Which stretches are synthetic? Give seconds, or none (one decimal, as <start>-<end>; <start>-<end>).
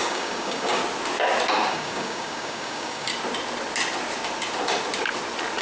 0.0-0.8; 1.7-3.1